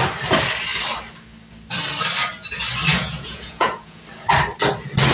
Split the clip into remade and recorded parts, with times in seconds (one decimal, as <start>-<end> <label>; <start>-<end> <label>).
0.0-2.9 recorded; 2.9-4.0 remade; 4.0-5.1 recorded